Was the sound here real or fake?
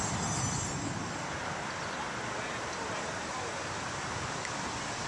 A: real